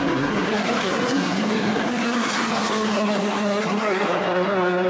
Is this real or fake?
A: fake